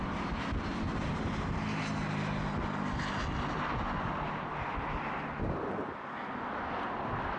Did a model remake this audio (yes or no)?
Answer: no